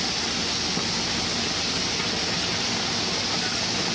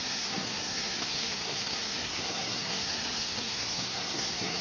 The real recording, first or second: first